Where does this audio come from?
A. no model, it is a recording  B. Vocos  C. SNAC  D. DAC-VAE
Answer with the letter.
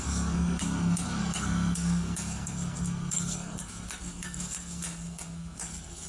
C